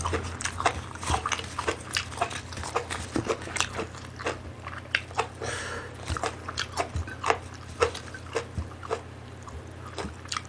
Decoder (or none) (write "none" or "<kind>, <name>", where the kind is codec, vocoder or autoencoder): none